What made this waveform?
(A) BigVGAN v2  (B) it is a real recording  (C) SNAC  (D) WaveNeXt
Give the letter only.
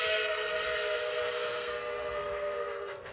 C